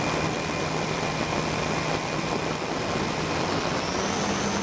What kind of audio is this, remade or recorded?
recorded